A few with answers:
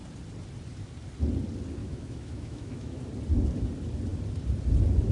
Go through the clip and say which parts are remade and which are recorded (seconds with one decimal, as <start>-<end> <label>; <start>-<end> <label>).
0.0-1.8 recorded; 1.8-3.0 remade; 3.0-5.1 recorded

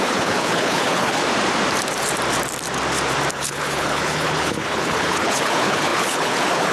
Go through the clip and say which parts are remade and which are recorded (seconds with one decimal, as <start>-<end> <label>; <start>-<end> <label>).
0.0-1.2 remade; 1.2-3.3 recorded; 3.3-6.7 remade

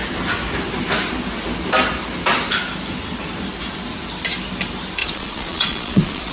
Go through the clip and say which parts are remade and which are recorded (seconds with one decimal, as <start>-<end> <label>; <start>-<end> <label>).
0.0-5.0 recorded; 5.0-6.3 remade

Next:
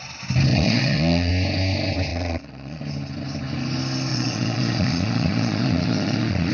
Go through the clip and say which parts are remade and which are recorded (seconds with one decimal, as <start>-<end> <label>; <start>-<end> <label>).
0.0-0.5 recorded; 0.5-1.3 remade; 1.3-2.1 recorded; 2.1-2.8 remade; 2.8-4.1 recorded; 4.1-6.5 remade

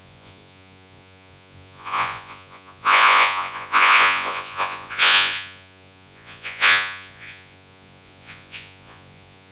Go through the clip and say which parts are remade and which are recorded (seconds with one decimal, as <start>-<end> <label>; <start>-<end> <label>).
0.0-9.5 remade